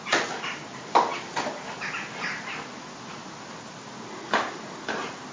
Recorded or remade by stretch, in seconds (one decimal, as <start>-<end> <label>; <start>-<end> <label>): 0.0-5.3 recorded